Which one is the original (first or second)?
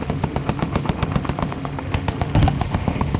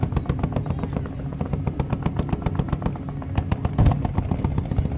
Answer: second